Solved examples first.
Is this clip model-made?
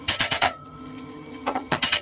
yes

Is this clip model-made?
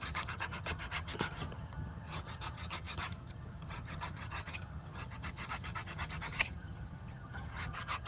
yes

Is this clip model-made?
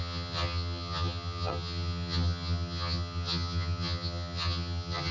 yes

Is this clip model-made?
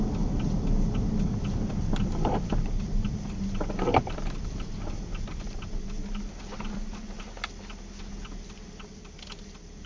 no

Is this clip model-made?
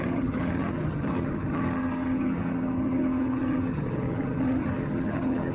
yes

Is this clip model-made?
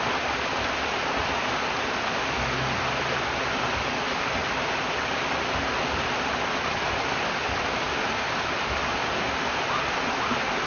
no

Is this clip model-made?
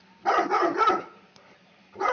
no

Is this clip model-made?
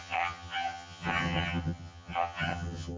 yes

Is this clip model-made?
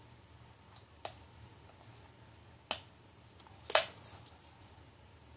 no